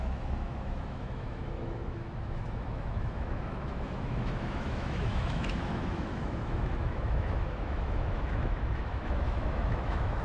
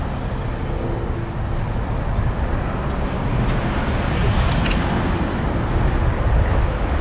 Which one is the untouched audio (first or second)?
second